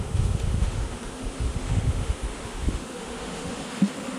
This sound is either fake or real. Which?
fake